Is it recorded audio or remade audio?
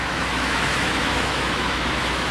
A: remade